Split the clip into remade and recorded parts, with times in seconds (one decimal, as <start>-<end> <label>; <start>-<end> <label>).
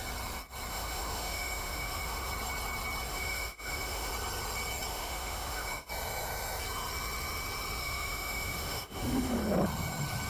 0.0-0.7 recorded; 0.7-2.3 remade; 2.3-3.1 recorded; 3.1-4.1 remade; 4.1-4.9 recorded; 4.9-5.9 remade; 5.9-7.8 recorded; 7.8-9.4 remade; 9.4-10.3 recorded